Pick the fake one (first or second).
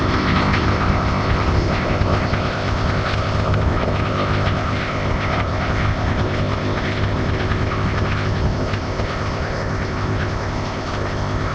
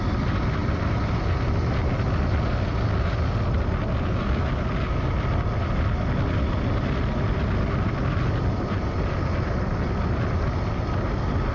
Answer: first